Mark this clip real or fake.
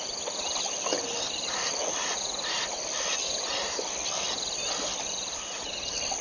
real